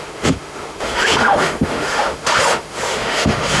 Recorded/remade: remade